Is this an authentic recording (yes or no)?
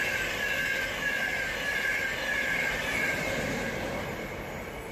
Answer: yes